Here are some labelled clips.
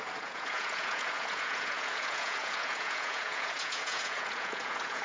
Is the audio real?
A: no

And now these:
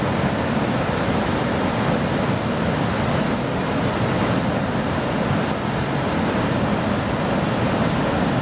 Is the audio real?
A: yes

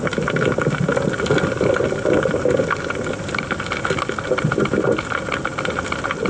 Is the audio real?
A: yes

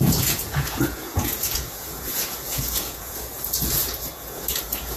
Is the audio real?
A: no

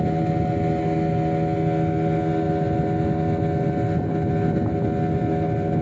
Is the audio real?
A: yes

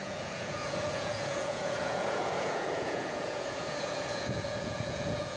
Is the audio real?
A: no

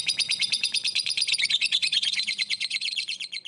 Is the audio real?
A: no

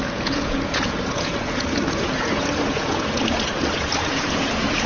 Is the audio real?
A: no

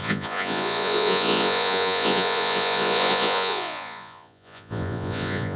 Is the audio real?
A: no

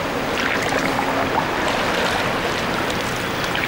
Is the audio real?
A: yes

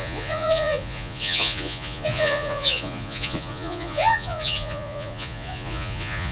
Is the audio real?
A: no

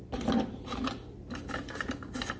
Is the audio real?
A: yes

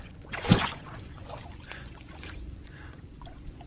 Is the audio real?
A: no